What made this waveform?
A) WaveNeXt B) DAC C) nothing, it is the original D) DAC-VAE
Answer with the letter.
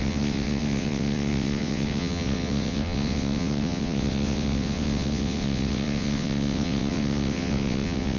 A